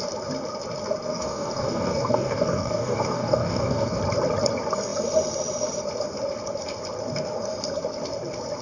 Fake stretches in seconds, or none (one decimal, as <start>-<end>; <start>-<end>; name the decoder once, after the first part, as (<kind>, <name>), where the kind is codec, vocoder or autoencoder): 1.1-4.0 (codec, DAC)